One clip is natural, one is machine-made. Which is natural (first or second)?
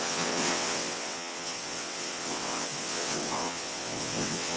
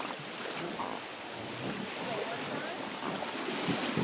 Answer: second